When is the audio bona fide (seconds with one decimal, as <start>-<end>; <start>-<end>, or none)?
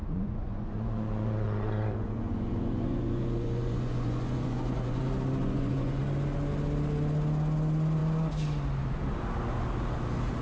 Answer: 5.0-5.4; 6.0-10.4